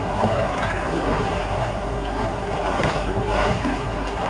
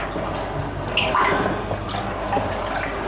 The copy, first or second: first